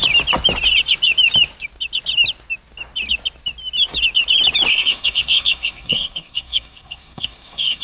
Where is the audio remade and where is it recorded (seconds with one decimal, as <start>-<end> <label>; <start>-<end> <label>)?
0.0-4.7 recorded; 4.7-7.8 remade